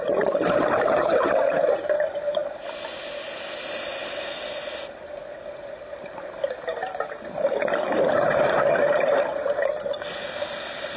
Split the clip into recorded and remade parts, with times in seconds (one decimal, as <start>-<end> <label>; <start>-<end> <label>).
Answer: 0.0-11.0 recorded